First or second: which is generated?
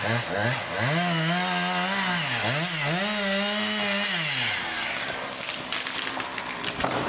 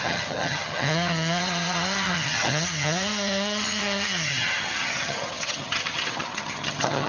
second